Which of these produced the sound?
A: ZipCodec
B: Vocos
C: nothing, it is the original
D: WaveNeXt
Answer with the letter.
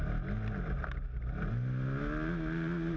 C